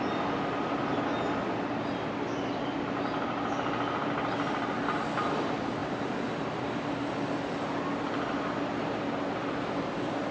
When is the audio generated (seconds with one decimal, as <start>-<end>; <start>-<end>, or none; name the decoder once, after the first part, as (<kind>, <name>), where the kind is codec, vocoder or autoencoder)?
none